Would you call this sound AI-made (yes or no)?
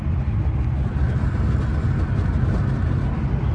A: no